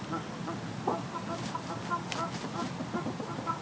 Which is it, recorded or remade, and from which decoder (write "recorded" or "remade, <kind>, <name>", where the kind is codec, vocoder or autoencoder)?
recorded